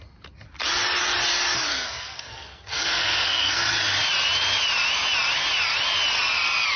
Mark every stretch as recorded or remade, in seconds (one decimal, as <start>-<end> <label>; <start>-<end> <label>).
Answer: 0.0-1.7 recorded; 1.7-3.6 remade; 3.6-6.8 recorded